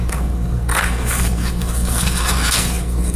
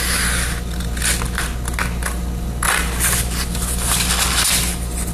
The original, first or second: second